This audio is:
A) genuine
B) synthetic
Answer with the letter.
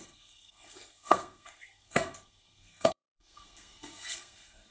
B